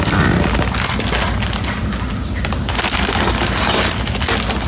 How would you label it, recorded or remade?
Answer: recorded